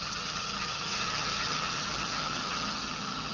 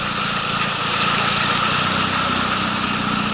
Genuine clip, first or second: second